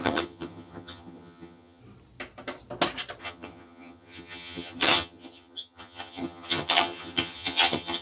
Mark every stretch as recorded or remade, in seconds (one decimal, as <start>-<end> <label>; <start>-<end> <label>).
0.0-1.8 remade; 1.8-3.2 recorded; 3.2-8.0 remade